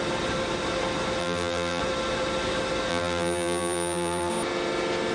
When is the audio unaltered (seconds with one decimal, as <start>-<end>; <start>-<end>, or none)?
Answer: 0.0-1.2; 1.8-2.9; 4.3-5.1